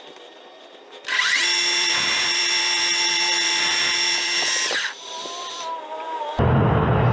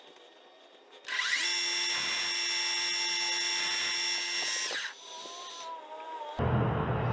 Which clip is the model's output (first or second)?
first